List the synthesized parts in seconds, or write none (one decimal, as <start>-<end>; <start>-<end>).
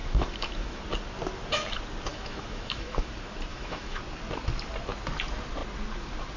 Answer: 0.0-0.8; 2.1-3.1; 3.5-4.0